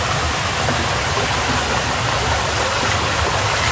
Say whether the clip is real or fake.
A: real